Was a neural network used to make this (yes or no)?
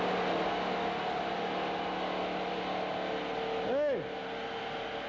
no